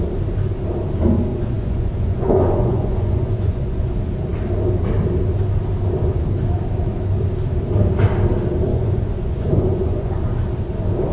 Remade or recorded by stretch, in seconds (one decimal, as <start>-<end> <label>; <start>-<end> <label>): 0.0-1.3 recorded; 1.3-3.9 remade; 3.9-8.7 recorded; 8.7-10.1 remade; 10.1-11.1 recorded